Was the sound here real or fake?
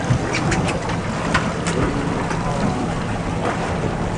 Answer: real